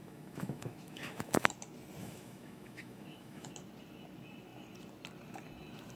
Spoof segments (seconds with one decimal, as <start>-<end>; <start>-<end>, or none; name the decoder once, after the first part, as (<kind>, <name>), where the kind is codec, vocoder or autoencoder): 0.0-1.5 (autoencoder, DAC-VAE); 2.0-3.5